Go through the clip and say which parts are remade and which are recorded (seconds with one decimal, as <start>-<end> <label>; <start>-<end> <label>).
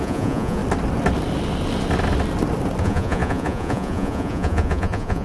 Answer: 0.0-0.6 remade; 0.6-2.8 recorded; 2.8-5.2 remade